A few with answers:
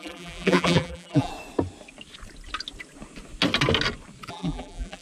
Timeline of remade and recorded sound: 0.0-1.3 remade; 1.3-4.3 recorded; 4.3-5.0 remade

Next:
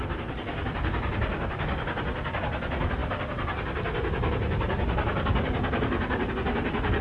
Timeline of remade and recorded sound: 0.0-7.0 recorded

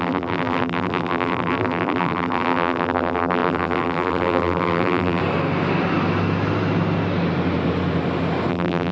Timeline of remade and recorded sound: 0.0-5.2 remade; 5.2-8.5 recorded; 8.5-8.9 remade

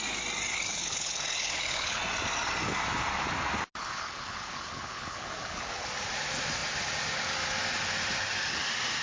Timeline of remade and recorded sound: 0.0-0.5 recorded; 0.5-2.0 remade; 2.0-3.8 recorded; 3.8-5.9 remade; 5.9-9.0 recorded

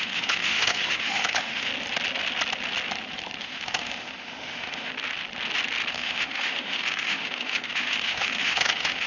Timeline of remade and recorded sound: 0.0-1.7 remade; 1.7-3.4 recorded; 3.4-4.9 remade; 4.9-5.9 recorded; 5.9-9.1 remade

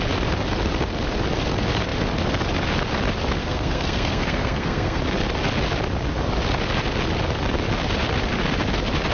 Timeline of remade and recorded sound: 0.0-3.4 recorded; 3.4-5.0 remade; 5.0-9.1 recorded

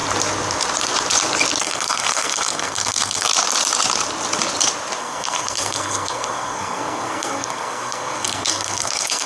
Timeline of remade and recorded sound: 0.0-1.6 recorded; 1.6-3.3 remade; 3.3-5.0 recorded; 5.0-9.3 remade

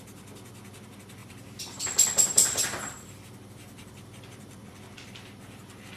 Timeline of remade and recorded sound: 0.0-1.2 recorded; 1.2-4.8 remade; 4.8-6.0 recorded